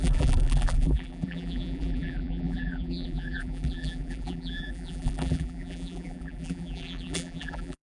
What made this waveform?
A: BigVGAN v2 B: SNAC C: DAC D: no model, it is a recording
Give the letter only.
A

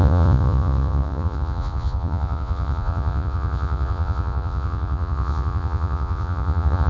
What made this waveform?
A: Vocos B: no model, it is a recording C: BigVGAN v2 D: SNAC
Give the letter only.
A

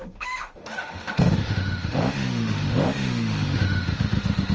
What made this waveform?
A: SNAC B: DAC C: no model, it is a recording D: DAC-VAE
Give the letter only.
D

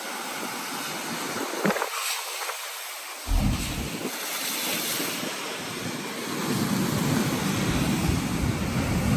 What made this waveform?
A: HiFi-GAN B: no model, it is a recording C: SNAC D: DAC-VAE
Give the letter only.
B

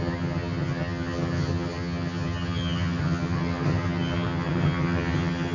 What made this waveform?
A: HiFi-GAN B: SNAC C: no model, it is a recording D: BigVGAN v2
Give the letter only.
A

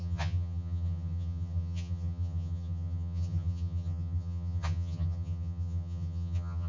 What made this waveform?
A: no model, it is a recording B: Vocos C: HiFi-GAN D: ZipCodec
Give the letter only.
C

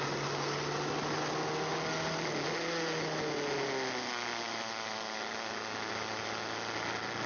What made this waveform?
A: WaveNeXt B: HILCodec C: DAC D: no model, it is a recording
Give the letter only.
D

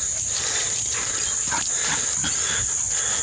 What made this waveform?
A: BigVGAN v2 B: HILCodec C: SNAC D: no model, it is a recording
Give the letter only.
D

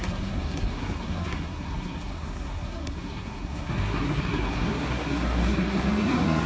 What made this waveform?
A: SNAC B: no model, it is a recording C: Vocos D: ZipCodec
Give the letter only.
A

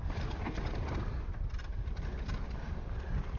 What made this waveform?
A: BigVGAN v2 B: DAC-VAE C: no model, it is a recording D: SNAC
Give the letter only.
C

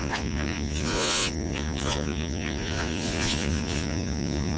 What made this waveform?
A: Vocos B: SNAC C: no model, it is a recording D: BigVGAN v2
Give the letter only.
A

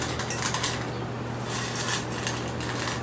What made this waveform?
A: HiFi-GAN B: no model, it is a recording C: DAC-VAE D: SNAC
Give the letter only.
B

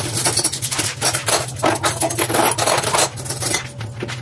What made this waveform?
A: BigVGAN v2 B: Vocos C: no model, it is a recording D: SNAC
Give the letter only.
C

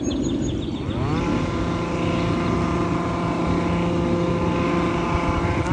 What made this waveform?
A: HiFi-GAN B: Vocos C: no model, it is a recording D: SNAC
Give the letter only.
C